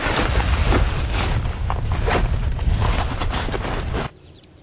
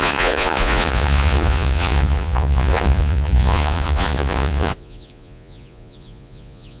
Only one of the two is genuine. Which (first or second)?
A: first